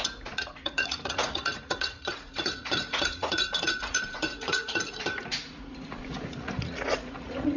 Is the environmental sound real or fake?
fake